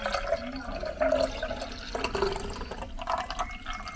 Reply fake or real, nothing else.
real